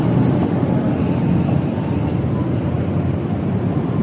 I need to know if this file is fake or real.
real